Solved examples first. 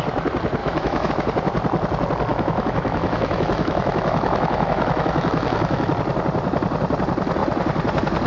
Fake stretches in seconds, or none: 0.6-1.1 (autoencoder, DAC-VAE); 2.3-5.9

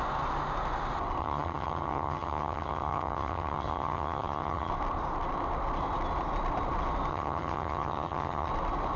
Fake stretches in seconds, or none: 1.2-4.7 (vocoder, HiFi-GAN); 7.1-8.5

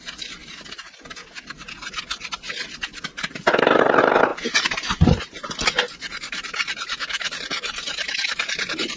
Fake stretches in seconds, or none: 4.3-9.0 (vocoder, BigVGAN v2)

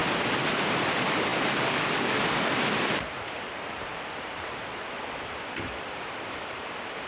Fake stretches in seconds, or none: 0.8-7.1 (vocoder, BigVGAN v2)